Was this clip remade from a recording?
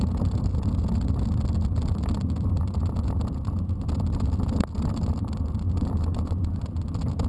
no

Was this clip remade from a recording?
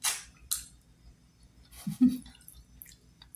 no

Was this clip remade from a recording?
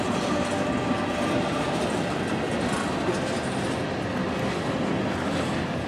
no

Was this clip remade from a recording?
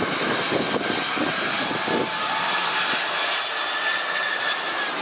no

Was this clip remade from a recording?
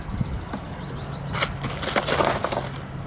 no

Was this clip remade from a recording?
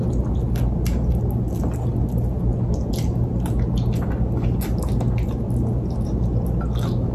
no